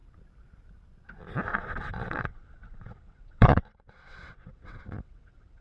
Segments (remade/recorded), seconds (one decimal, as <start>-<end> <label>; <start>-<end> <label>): 0.0-1.5 recorded; 1.5-5.6 remade